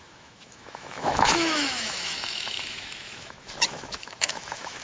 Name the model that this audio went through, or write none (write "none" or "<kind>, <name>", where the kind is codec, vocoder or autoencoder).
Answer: autoencoder, DAC-VAE